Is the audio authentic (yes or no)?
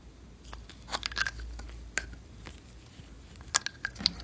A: yes